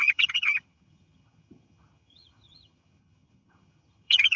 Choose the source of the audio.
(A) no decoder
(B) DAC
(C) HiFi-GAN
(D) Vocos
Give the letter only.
C